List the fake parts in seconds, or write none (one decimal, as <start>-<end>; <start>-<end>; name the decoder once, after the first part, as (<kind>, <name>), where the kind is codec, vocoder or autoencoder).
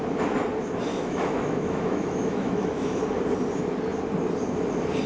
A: 0.9-3.0 (autoencoder, DAC-VAE)